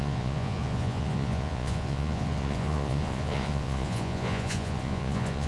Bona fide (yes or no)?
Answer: no